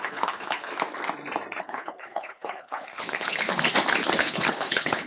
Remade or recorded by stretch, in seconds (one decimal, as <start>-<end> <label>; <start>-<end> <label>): 0.0-0.7 remade; 0.7-1.6 recorded; 1.6-3.5 remade; 3.5-4.2 recorded; 4.2-5.1 remade